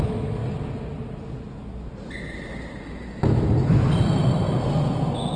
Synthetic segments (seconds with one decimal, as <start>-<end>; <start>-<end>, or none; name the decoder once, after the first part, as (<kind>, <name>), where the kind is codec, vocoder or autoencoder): 0.0-0.4 (autoencoder, DAC-VAE); 2.8-3.8